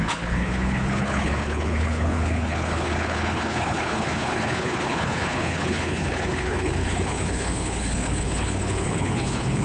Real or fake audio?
fake